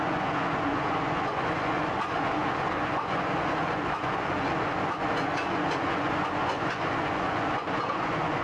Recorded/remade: remade